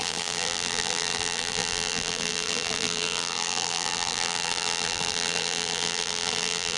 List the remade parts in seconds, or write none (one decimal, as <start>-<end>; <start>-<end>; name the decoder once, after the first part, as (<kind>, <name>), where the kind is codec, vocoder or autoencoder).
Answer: 0.0-6.8 (vocoder, BigVGAN v2)